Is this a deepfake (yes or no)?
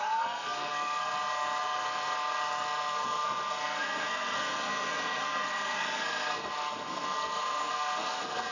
yes